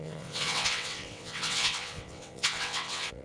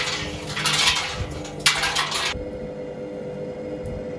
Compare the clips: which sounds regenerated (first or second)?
first